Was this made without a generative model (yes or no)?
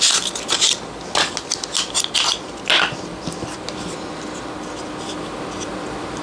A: yes